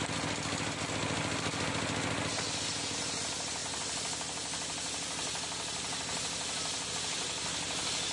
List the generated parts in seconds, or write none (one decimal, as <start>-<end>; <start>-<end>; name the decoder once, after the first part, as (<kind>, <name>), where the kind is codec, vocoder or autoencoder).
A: none